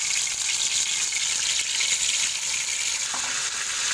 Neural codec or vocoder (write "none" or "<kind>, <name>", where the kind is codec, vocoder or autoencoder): none